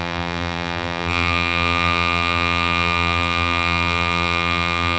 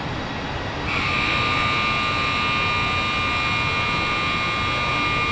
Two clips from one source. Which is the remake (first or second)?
first